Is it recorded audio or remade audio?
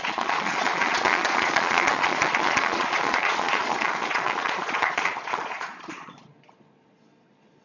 remade